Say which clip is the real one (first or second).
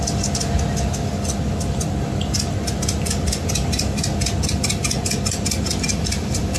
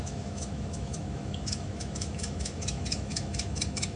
first